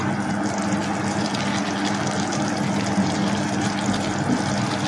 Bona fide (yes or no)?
yes